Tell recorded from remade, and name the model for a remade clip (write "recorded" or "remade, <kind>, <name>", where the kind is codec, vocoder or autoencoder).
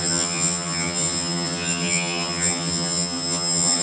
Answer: remade, vocoder, HiFi-GAN